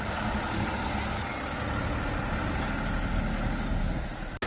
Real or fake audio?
real